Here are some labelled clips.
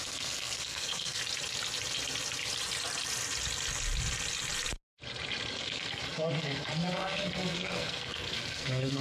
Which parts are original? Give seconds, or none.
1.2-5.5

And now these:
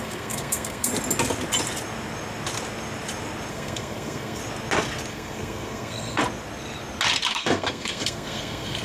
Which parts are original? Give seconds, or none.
0.9-3.5; 4.4-5.1; 6.2-7.3

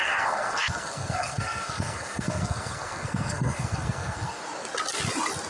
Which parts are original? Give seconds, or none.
4.4-5.5

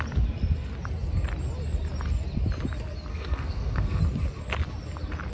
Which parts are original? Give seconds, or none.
0.0-3.1; 4.0-5.3